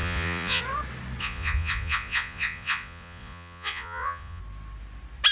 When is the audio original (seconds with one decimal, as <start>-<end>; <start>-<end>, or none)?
0.6-1.2; 4.4-5.3

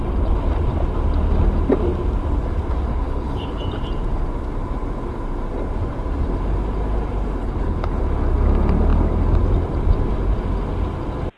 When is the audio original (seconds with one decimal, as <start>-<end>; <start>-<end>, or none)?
0.0-2.9; 3.6-7.4; 8.0-11.4

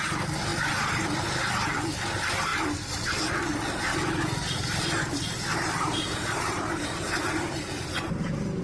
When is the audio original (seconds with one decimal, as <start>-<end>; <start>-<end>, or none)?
0.0-3.9

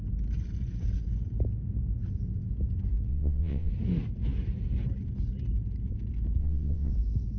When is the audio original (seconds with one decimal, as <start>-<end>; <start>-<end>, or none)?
0.0-3.1; 3.7-6.4; 6.9-7.4

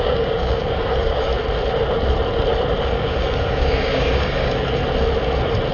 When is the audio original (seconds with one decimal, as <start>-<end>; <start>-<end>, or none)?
1.3-2.8; 4.8-5.7

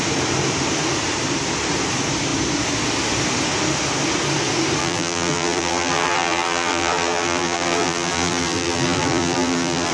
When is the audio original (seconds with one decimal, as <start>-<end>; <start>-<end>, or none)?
0.0-4.8

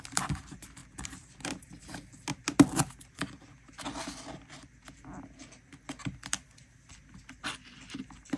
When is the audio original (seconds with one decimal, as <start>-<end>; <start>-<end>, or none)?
0.0-8.4

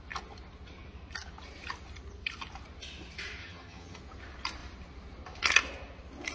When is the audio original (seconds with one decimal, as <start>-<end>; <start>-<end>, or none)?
0.0-3.4; 4.0-6.3